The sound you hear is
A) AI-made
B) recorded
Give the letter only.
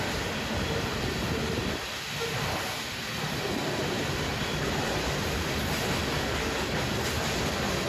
B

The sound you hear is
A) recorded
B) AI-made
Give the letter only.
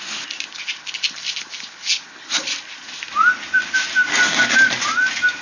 A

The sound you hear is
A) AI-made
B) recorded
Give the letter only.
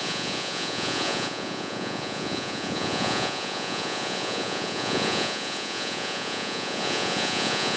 A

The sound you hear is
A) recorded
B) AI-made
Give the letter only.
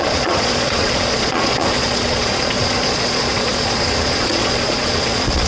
B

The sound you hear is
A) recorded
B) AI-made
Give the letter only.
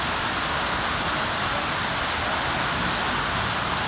A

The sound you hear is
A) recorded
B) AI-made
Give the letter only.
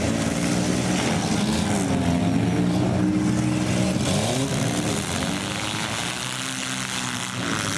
A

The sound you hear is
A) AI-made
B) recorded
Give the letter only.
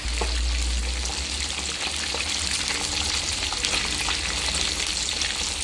B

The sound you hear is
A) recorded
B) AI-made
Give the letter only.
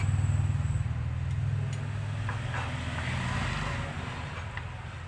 A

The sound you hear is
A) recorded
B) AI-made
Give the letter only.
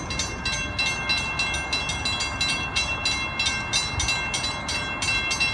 A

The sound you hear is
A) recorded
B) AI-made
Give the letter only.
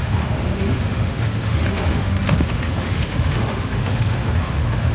B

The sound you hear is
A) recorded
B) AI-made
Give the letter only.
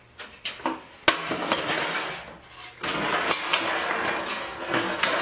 A